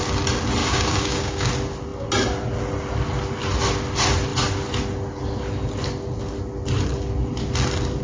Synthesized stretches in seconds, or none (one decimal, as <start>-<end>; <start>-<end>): 0.6-1.5